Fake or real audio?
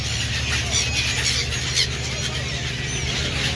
real